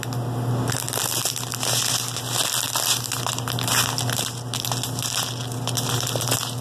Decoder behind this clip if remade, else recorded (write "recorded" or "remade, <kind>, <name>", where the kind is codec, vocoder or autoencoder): recorded